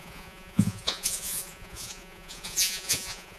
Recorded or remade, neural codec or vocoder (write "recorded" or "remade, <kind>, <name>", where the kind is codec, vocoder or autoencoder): remade, vocoder, Vocos